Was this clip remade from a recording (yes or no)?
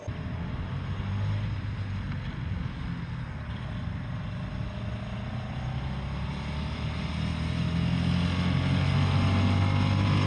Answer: no